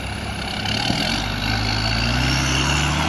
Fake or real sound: real